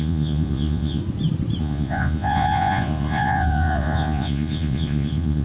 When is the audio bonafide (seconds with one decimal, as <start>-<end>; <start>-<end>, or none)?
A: 1.0-1.6